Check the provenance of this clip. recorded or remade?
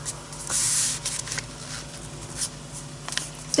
recorded